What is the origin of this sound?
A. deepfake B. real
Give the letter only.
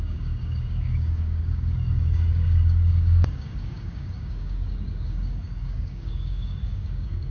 A